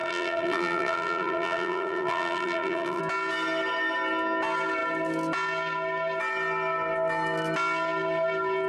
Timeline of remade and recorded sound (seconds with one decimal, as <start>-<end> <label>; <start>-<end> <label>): 0.0-3.0 remade; 3.0-8.7 recorded